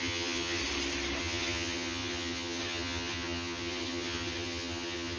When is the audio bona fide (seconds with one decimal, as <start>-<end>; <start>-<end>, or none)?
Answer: 0.6-1.2